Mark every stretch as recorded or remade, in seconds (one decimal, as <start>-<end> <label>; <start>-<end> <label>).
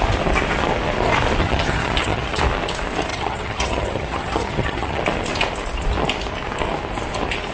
0.0-1.4 recorded; 1.4-2.4 remade; 2.4-3.1 recorded; 3.1-5.0 remade; 5.0-7.5 recorded